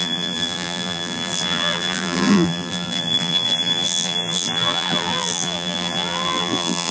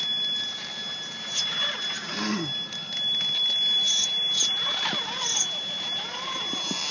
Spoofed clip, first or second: first